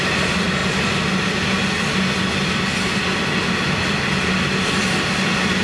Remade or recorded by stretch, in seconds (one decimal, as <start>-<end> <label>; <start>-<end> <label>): 0.0-5.6 recorded